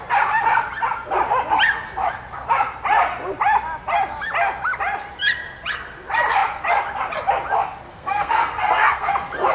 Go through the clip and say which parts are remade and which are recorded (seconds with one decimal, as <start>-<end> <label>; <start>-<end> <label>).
0.0-7.9 recorded; 7.9-9.1 remade; 9.1-9.5 recorded